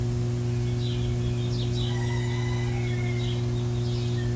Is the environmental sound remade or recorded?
recorded